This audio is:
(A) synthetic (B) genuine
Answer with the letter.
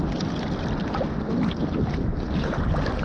B